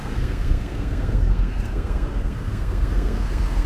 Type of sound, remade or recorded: remade